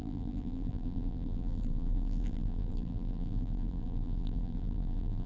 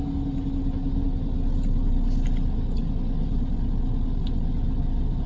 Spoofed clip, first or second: first